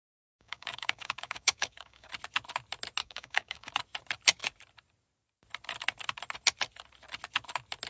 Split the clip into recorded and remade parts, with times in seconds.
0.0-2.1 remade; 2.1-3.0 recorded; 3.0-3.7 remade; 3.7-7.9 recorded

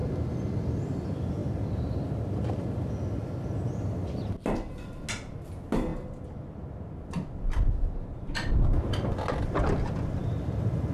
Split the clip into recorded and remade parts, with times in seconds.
0.0-5.9 recorded; 5.9-6.4 remade; 6.4-10.9 recorded